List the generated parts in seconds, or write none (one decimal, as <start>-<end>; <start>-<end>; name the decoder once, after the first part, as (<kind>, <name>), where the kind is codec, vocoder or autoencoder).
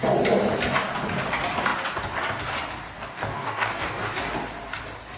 3.1-4.2 (codec, DAC)